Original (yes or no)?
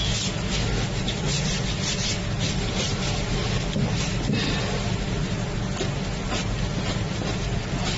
yes